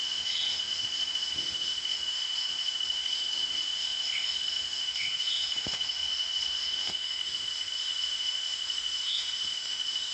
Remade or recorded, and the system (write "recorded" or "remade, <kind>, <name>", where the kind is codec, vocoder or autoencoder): remade, autoencoder, DAC-VAE